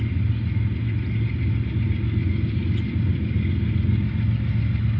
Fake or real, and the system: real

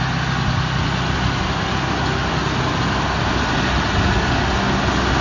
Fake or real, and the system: real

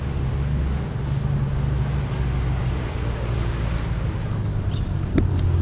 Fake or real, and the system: real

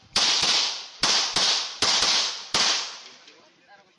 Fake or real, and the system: fake, vocoder, BigVGAN v2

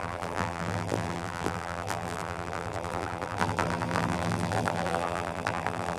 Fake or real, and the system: fake, vocoder, BigVGAN v2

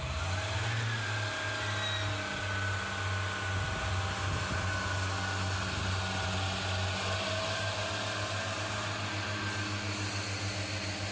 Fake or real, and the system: real